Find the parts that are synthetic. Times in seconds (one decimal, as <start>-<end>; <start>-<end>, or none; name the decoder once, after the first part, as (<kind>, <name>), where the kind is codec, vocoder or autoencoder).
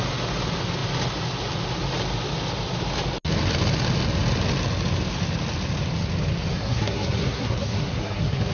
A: 6.5-8.5 (codec, SNAC)